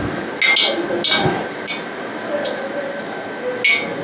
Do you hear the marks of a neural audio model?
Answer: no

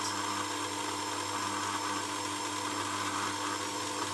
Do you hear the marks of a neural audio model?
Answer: no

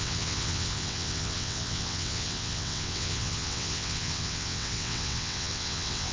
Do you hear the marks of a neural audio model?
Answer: yes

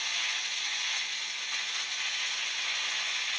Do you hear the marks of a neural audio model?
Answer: yes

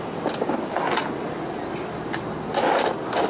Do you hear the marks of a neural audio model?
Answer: no